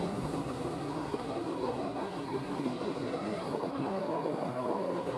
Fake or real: fake